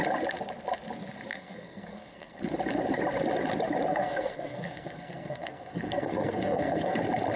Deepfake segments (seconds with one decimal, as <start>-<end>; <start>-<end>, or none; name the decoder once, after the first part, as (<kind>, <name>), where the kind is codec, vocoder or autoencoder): 1.3-2.4 (codec, SNAC); 3.9-7.0